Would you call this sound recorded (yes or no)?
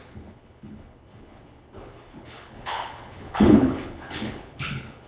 no